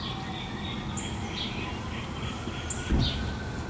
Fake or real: real